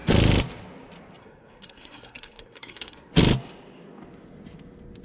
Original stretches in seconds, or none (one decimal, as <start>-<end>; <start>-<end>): 0.0-1.2; 3.1-5.0